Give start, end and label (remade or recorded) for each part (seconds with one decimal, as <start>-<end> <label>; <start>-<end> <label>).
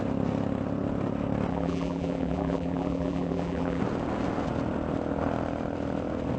0.0-1.5 recorded; 1.5-3.8 remade; 3.8-6.4 recorded